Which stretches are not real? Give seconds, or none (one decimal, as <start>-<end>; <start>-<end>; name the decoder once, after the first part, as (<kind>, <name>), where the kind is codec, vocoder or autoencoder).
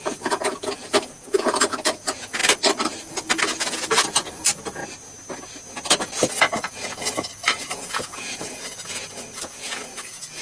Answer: 0.0-4.8 (vocoder, Vocos); 6.4-10.4